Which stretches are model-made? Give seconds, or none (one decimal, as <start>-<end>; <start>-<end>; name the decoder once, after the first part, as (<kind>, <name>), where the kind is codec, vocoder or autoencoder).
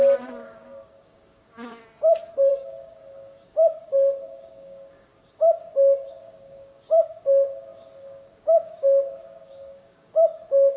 0.0-1.8 (codec, DAC); 2.5-10.8